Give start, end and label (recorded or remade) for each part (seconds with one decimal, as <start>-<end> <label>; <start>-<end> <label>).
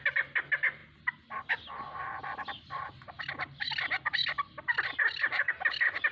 0.0-6.1 recorded